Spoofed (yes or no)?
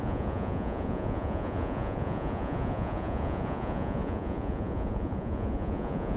yes